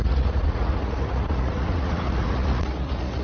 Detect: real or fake fake